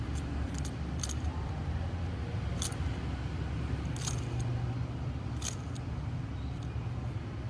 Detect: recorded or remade recorded